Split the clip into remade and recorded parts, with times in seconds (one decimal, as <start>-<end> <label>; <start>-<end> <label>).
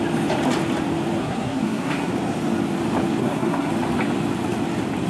0.0-1.2 recorded; 1.2-2.1 remade; 2.1-3.2 recorded; 3.2-3.7 remade; 3.7-5.1 recorded